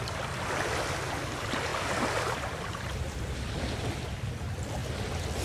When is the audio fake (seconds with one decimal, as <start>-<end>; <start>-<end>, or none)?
1.7-4.3